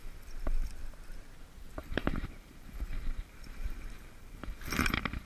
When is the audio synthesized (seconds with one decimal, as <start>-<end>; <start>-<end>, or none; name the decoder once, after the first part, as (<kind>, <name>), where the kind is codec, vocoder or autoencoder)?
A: 0.0-0.7 (vocoder, BigVGAN v2); 1.8-5.3